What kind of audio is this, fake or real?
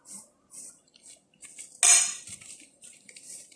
real